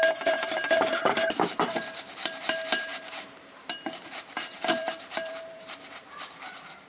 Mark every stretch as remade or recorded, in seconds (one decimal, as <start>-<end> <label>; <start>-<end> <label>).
0.0-0.9 remade; 0.9-1.5 recorded; 1.5-6.9 remade